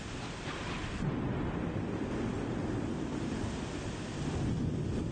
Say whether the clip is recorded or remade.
recorded